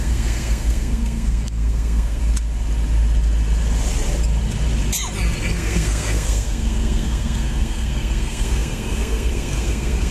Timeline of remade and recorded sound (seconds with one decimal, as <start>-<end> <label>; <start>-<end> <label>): 0.0-2.2 remade; 2.2-5.5 recorded; 5.5-10.1 remade